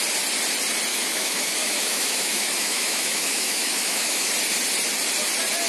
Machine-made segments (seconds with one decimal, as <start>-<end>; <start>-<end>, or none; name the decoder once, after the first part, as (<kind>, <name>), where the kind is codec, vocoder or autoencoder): 0.9-4.3 (autoencoder, DAC-VAE)